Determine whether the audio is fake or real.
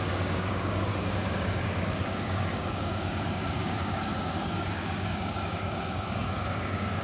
fake